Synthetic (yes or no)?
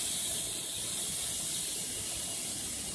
no